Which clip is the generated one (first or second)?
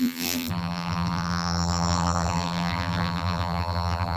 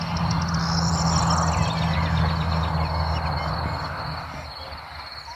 first